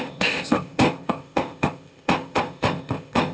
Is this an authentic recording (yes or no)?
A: no